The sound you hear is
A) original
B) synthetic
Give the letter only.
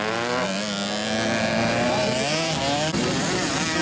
A